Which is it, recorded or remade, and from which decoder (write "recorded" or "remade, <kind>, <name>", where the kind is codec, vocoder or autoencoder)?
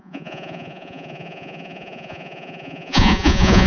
remade, vocoder, Vocos